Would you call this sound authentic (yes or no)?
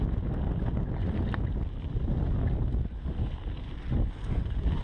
yes